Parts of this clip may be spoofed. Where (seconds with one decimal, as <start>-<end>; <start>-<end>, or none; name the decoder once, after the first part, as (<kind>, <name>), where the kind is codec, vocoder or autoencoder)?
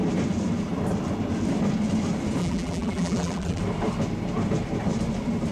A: 2.4-3.6 (vocoder, BigVGAN v2)